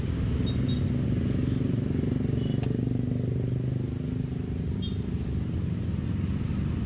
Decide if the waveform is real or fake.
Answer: real